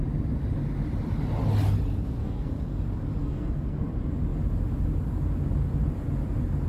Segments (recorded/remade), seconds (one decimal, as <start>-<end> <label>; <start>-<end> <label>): 0.0-2.2 recorded; 2.2-2.8 remade; 2.8-3.2 recorded; 3.2-3.9 remade; 3.9-6.7 recorded

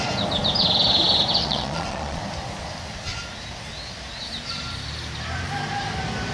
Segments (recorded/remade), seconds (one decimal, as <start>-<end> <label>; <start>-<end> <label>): 0.0-1.4 recorded; 1.4-2.2 remade; 2.2-6.3 recorded

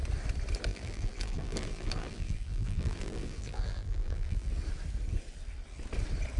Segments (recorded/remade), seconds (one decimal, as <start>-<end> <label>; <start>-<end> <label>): 0.0-0.7 recorded; 0.7-4.5 remade; 4.5-6.4 recorded

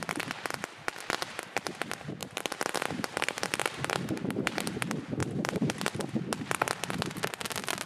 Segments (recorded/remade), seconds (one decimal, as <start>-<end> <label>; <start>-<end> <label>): 0.0-2.2 recorded; 2.2-4.7 remade; 4.7-5.2 recorded; 5.2-5.7 remade; 5.7-7.9 recorded

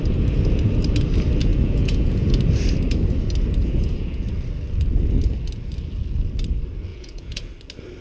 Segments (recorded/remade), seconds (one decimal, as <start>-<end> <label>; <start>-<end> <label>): 0.0-1.5 recorded; 1.5-2.3 remade; 2.3-3.6 recorded; 3.6-4.2 remade; 4.2-6.9 recorded; 6.9-7.4 remade; 7.4-8.0 recorded

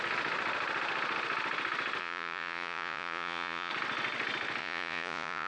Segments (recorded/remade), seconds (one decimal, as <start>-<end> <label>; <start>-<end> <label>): 0.0-2.0 recorded; 2.0-3.7 remade; 3.7-4.6 recorded; 4.6-5.5 remade

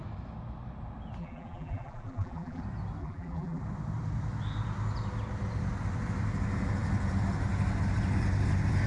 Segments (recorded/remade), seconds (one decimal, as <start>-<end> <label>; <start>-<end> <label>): 0.0-1.2 recorded; 1.2-2.6 remade; 2.6-3.0 recorded; 3.0-3.6 remade; 3.6-8.9 recorded